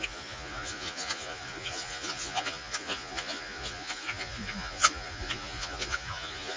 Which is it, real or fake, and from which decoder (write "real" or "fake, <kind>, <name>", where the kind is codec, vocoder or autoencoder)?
fake, vocoder, Vocos